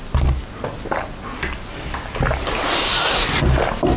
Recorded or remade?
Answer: recorded